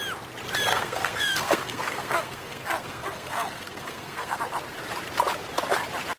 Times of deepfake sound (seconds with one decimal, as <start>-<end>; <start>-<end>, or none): 0.7-4.4